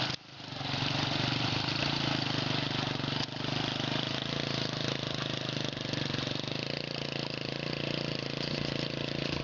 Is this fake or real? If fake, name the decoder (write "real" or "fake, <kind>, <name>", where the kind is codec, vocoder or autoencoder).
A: real